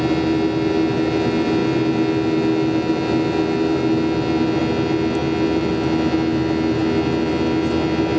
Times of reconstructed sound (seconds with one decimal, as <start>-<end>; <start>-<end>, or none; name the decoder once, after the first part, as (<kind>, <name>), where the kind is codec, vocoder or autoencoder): none